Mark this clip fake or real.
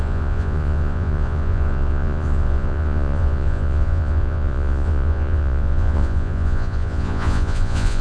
fake